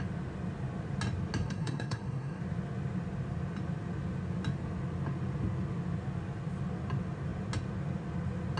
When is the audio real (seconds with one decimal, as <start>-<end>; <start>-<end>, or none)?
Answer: 0.0-1.4; 2.4-8.6